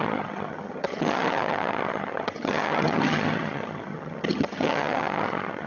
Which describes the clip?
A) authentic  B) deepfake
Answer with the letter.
B